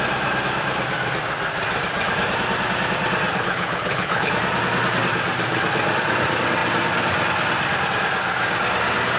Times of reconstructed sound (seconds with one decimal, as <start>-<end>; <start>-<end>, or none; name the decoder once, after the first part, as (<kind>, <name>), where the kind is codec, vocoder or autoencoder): 3.3-4.3 (codec, HILCodec)